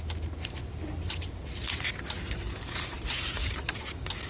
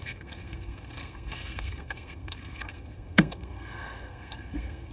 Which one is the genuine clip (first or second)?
first